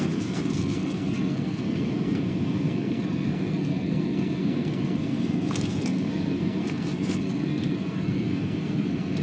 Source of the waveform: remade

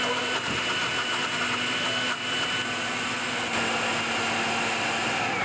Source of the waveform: recorded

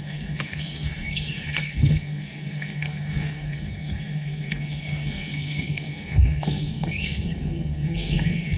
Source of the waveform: remade